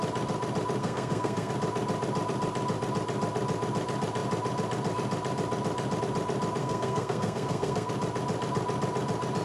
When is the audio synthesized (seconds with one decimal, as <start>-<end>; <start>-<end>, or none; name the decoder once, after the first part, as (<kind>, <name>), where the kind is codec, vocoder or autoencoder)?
0.8-1.5 (codec, SNAC); 6.6-7.9